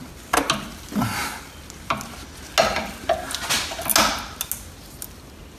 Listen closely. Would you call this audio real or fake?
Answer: real